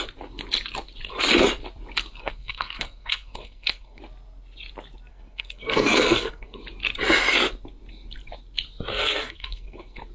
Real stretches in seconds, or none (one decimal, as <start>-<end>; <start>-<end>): 0.0-2.2; 4.0-5.1; 6.6-8.9